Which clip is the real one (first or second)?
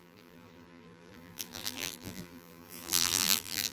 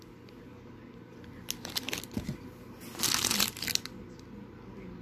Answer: second